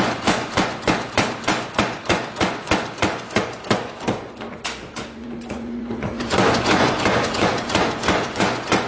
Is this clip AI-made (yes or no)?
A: yes